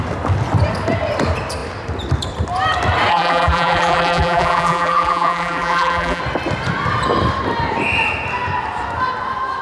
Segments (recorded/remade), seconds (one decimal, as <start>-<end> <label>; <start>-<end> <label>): 0.0-3.1 recorded; 3.1-6.2 remade; 6.2-9.6 recorded